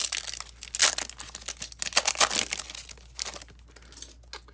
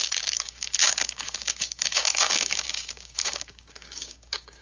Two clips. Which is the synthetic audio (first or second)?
second